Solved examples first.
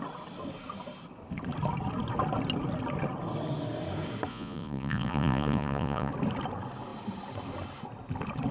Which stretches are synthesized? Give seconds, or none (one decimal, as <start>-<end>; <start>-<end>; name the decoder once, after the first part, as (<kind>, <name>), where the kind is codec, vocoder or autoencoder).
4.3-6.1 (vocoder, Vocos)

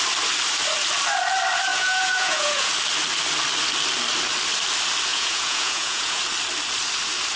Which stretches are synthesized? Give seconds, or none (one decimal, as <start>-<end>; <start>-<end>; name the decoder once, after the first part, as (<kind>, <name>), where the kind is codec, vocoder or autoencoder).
1.7-2.7 (vocoder, Vocos); 5.1-6.2

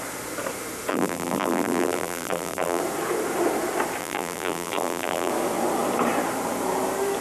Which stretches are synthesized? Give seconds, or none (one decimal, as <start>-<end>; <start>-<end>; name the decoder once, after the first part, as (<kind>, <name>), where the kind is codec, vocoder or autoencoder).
0.9-2.8 (vocoder, BigVGAN v2); 4.0-5.3

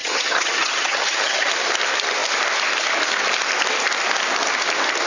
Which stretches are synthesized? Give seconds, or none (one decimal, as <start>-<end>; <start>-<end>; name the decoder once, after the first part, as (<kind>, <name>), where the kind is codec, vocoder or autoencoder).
0.0-1.5 (vocoder, HiFi-GAN)

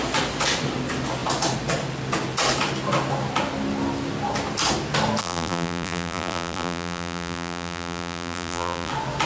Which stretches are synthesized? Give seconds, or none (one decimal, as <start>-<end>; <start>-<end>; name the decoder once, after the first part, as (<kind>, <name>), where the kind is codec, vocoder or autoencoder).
5.2-8.9 (vocoder, BigVGAN v2)